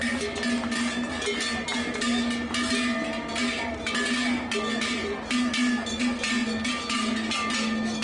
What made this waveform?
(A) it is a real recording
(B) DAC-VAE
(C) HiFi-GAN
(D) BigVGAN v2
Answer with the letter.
A